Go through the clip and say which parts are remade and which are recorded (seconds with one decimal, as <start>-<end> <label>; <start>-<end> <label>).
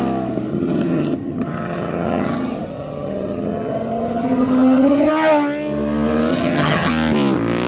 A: 0.0-0.5 recorded; 0.5-5.1 remade; 5.1-6.3 recorded; 6.3-6.9 remade; 6.9-7.7 recorded